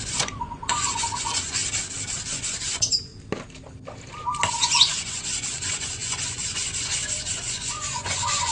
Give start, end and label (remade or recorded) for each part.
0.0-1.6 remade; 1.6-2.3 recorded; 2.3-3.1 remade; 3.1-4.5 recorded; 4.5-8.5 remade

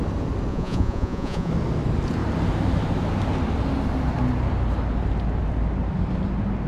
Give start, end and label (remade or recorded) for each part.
0.0-0.5 recorded; 0.5-1.5 remade; 1.5-6.7 recorded

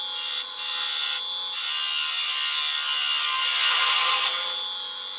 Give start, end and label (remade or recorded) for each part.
0.0-5.2 recorded

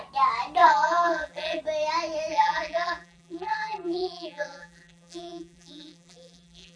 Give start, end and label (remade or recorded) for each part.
0.0-0.6 recorded; 0.6-1.6 remade; 1.6-2.3 recorded; 2.3-6.8 remade